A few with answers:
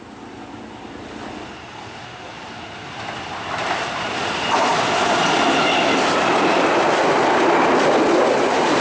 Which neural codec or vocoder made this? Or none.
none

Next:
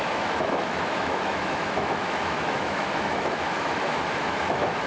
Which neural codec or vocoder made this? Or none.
autoencoder, DAC-VAE